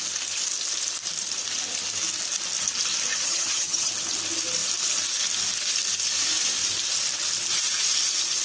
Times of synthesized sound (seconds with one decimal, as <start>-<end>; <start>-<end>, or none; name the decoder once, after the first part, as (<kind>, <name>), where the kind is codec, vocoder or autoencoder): 3.1-3.9 (vocoder, HiFi-GAN)